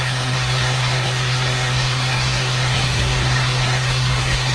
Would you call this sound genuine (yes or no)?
no